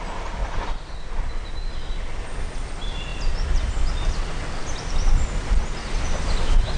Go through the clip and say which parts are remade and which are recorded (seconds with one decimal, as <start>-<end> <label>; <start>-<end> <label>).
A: 0.0-6.8 recorded